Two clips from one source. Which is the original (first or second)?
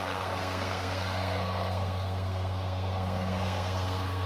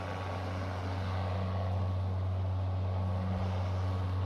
second